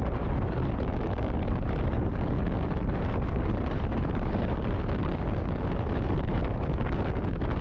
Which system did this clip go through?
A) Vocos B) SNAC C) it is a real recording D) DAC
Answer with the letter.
D